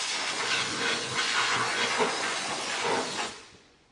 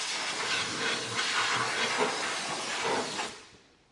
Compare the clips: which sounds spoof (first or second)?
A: first